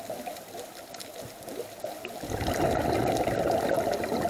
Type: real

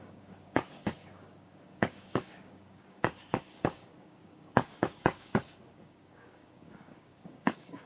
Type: fake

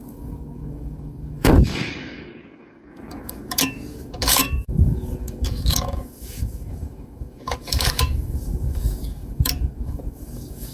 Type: fake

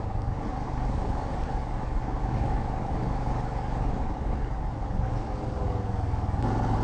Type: fake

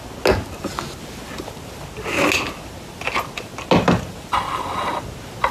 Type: real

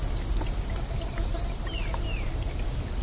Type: real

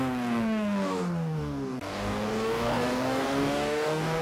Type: fake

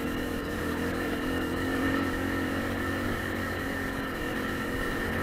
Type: fake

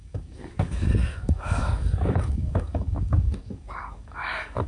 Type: fake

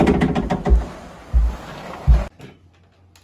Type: real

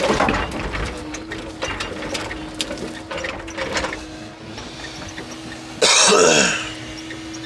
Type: real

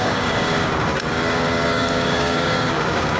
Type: fake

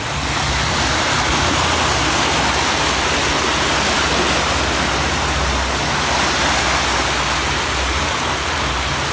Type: real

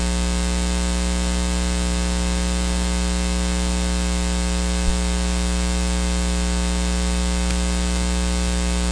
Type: real